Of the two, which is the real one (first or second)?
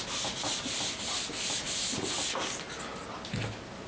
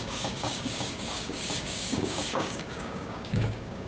first